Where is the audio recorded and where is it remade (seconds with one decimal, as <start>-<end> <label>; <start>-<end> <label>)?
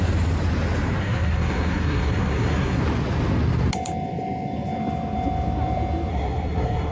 0.0-1.0 recorded; 1.0-2.8 remade; 2.8-6.1 recorded; 6.1-6.9 remade